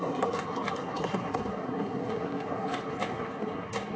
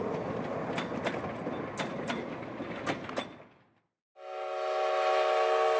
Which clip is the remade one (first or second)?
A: first